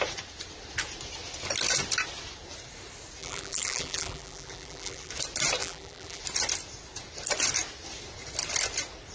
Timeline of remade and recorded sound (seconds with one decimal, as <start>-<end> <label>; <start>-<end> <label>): 0.0-3.2 recorded; 3.2-5.1 remade; 5.1-5.6 recorded; 5.6-6.2 remade; 6.2-9.1 recorded